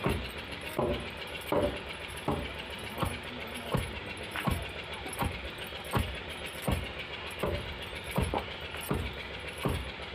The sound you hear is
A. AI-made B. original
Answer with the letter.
A